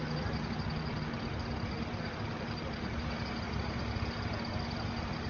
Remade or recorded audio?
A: recorded